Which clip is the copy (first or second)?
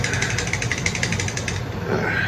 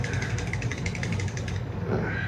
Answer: second